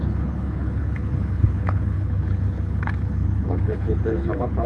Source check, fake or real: fake